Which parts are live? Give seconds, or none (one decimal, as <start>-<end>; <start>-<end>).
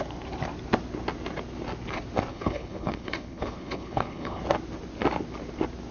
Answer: 0.0-2.3; 4.4-5.9